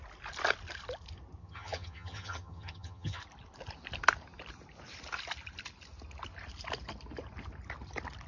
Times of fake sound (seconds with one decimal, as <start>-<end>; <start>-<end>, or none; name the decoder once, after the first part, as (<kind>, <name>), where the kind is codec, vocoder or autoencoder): 1.4-3.2 (vocoder, HiFi-GAN)